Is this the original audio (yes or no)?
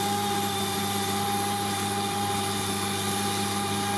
yes